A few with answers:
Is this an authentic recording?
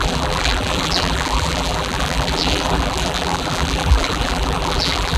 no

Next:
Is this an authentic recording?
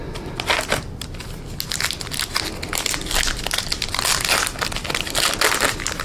yes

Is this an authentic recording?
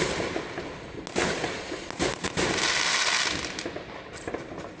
yes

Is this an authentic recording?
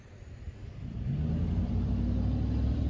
no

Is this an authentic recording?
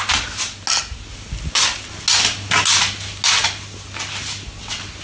yes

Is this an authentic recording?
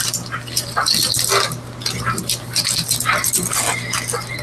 yes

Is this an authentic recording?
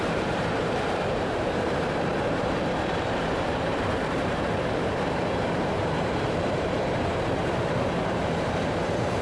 no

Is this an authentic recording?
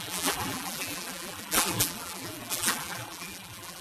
no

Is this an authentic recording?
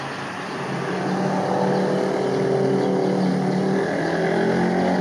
yes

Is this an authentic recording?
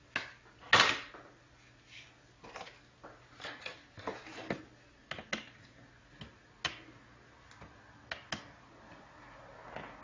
yes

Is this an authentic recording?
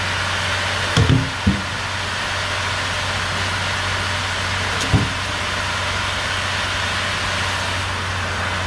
yes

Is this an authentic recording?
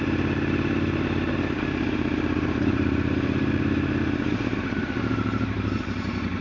no